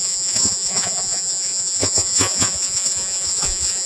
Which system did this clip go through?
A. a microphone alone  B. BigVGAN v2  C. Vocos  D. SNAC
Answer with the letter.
C